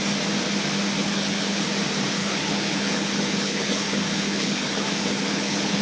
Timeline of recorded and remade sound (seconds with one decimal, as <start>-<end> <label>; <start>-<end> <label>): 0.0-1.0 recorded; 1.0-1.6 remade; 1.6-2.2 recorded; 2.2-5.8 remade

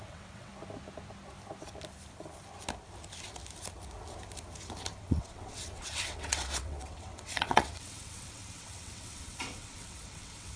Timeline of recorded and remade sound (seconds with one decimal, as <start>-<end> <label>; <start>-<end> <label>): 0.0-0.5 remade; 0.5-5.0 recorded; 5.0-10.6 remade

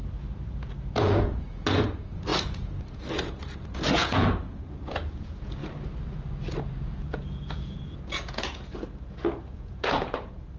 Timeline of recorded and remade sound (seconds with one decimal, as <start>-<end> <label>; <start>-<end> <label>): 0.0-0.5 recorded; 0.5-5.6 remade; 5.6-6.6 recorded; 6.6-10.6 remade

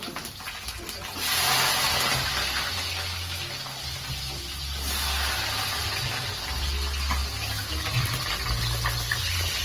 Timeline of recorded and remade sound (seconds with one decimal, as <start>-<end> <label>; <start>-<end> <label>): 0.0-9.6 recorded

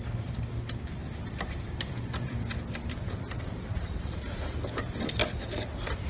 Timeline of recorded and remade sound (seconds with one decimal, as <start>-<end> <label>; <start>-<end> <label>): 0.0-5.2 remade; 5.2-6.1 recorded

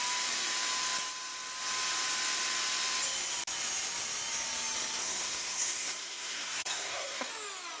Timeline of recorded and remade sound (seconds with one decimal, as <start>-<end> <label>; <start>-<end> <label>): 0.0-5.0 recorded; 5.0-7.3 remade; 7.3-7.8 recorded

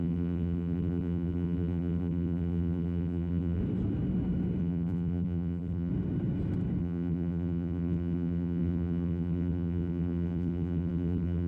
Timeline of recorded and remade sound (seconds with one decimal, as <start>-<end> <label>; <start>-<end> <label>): 0.0-3.6 remade; 3.6-4.6 recorded; 4.6-5.9 remade; 5.9-6.8 recorded; 6.8-11.5 remade

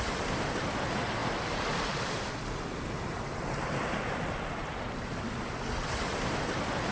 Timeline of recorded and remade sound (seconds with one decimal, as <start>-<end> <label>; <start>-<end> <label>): 0.0-6.9 recorded